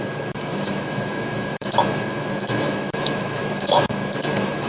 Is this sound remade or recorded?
remade